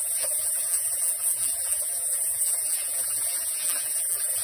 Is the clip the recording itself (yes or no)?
no